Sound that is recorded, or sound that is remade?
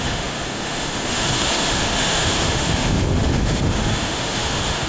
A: remade